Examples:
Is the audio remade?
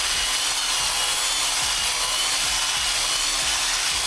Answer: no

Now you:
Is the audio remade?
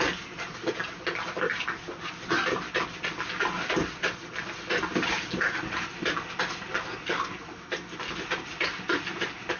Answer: no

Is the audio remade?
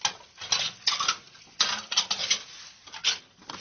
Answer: no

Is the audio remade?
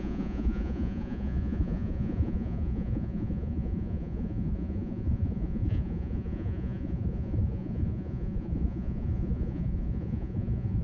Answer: yes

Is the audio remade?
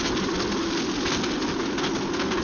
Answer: no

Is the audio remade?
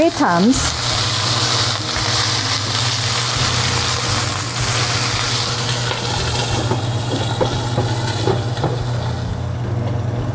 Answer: no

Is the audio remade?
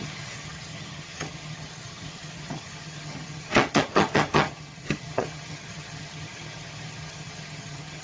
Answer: yes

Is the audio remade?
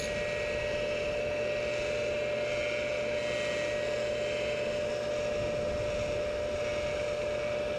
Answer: no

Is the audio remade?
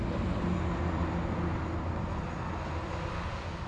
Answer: no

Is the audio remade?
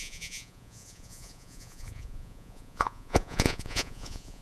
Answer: yes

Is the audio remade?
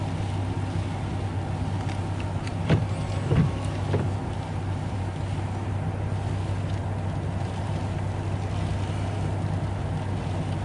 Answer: no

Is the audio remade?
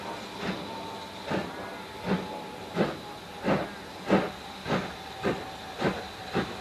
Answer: no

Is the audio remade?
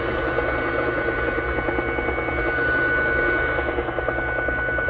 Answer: no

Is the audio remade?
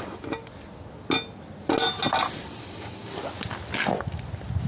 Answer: no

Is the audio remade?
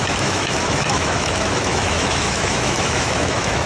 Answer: yes